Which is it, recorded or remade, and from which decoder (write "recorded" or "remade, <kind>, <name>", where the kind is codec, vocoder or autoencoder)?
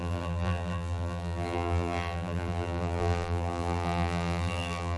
remade, vocoder, BigVGAN v2